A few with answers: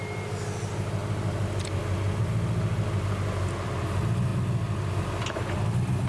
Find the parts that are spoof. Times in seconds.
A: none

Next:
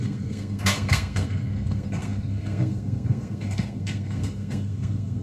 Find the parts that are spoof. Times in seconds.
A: 0.0-5.2 (codec, SNAC)